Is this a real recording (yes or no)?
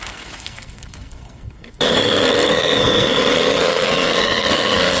no